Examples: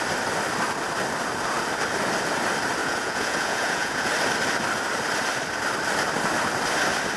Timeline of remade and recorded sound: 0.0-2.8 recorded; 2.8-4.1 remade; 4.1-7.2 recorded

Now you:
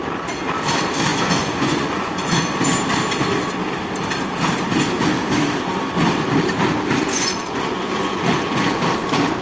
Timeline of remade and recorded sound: 0.0-1.1 recorded; 1.1-2.4 remade; 2.4-7.1 recorded; 7.1-8.8 remade; 8.8-9.4 recorded

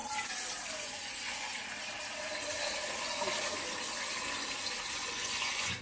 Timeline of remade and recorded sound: 0.0-0.8 recorded; 0.8-1.5 remade; 1.5-4.9 recorded; 4.9-5.8 remade

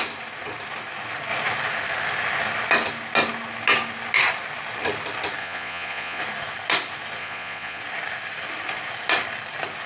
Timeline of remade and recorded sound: 0.0-5.4 recorded; 5.4-6.2 remade; 6.2-7.2 recorded; 7.2-7.8 remade; 7.8-9.9 recorded